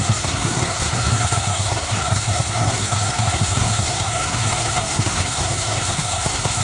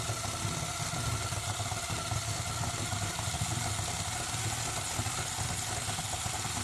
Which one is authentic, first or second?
second